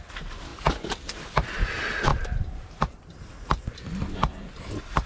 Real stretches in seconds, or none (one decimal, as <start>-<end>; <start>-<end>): 0.0-2.1; 3.0-5.1